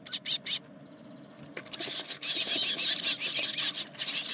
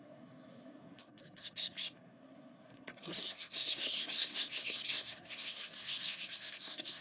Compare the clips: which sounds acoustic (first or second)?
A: first